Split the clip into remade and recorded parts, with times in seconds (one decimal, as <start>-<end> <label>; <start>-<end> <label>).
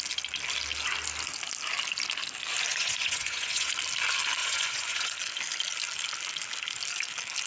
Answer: 0.0-2.7 recorded; 2.7-3.7 remade; 3.7-4.4 recorded; 4.4-5.1 remade; 5.1-7.5 recorded